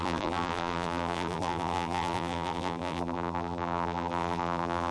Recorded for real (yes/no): no